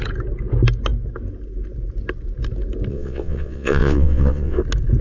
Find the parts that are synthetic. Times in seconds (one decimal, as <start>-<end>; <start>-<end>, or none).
2.9-4.6